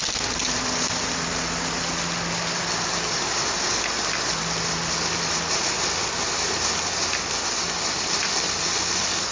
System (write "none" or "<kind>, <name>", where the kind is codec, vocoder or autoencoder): none